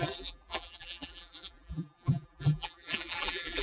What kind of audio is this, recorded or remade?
remade